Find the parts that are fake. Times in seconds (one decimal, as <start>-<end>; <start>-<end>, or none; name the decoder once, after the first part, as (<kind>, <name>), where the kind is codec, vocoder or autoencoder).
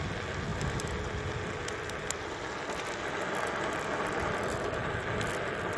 none